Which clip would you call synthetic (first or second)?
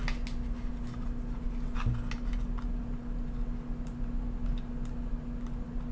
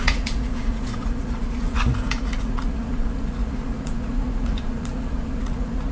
second